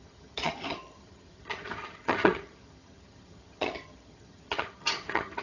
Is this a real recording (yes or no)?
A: no